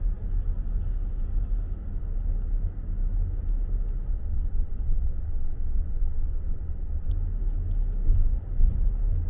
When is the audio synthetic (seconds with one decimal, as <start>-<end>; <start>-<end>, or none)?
4.1-7.1